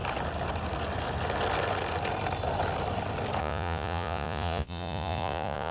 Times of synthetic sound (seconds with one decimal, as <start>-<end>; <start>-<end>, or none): 3.4-5.7